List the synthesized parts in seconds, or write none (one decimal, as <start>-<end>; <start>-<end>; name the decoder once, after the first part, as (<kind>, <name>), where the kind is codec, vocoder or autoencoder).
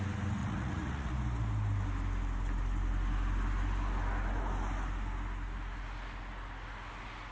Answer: 0.4-1.1 (vocoder, Vocos)